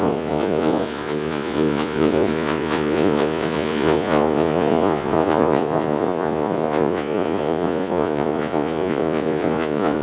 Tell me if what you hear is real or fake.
fake